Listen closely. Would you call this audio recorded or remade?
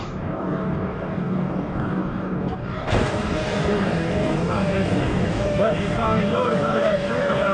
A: remade